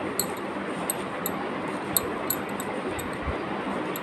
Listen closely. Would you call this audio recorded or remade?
recorded